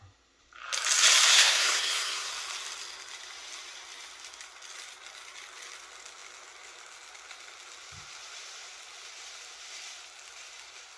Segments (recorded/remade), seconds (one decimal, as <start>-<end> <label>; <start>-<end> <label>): 0.0-1.3 recorded; 1.3-2.3 remade; 2.3-11.0 recorded